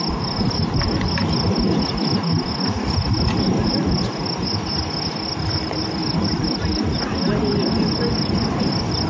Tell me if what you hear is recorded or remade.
recorded